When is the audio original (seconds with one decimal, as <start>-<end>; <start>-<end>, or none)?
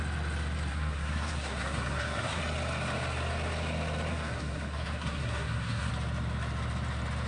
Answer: 0.0-0.7; 2.4-4.1; 5.9-7.3